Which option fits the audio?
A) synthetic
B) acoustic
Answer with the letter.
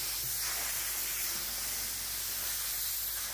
B